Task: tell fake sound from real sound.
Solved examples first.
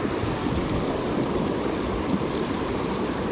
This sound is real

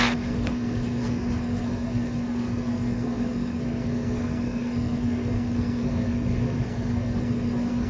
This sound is fake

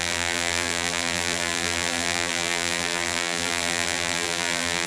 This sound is fake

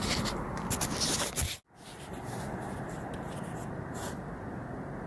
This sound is real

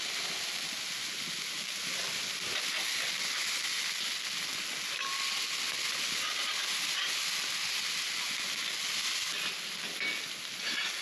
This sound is real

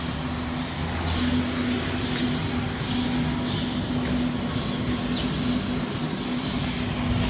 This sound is real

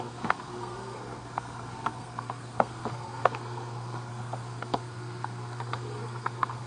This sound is fake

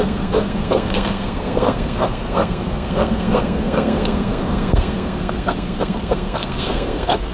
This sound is fake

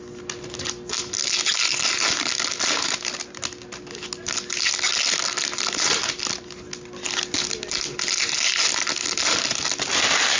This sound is real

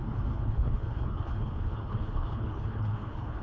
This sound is fake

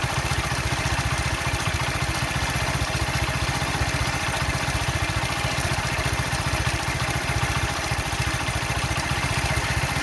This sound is fake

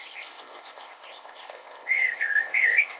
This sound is fake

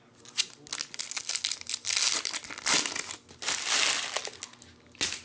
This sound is real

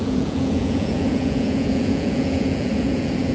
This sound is fake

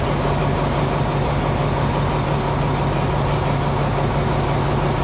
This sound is real